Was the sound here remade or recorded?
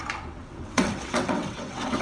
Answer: remade